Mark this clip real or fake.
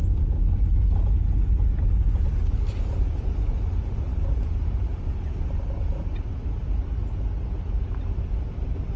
real